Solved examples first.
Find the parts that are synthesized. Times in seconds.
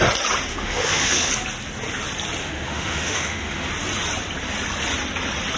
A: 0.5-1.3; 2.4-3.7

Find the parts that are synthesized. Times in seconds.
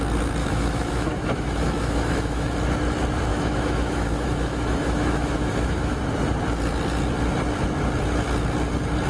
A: 0.4-2.5; 3.3-6.0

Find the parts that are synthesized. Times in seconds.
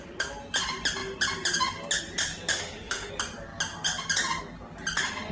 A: 2.5-3.1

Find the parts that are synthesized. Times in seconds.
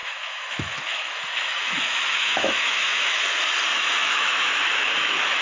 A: 0.0-3.2; 3.7-5.4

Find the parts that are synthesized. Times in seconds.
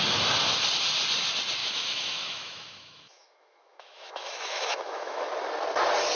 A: 1.6-5.3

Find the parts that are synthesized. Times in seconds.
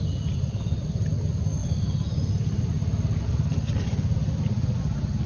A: none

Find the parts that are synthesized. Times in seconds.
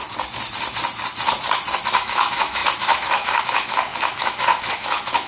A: 1.8-5.3